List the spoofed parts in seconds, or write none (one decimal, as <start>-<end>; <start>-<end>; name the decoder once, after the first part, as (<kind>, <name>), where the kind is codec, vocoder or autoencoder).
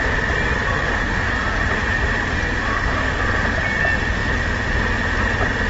0.7-1.3 (autoencoder, DAC-VAE); 2.7-3.2